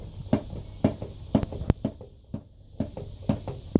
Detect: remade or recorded recorded